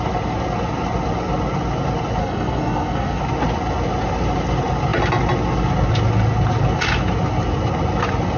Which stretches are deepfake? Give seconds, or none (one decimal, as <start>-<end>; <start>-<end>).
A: 2.2-3.2